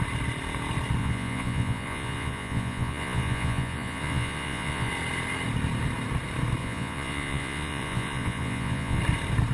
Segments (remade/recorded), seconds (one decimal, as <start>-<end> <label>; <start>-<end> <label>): 0.0-1.0 recorded; 1.0-4.9 remade; 4.9-6.6 recorded; 6.6-9.0 remade; 9.0-9.5 recorded